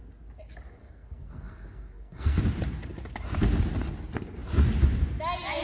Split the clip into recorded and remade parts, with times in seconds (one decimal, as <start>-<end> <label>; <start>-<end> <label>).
0.0-0.8 recorded; 0.8-2.4 remade; 2.4-5.6 recorded